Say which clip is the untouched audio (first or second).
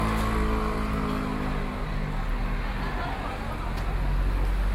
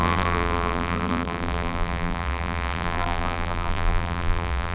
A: first